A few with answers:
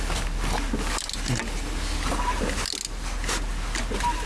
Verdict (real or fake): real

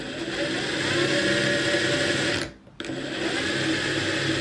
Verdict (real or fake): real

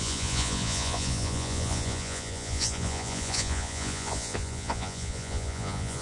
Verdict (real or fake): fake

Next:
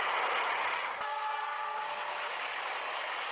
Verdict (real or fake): real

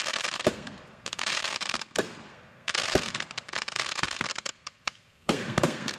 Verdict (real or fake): fake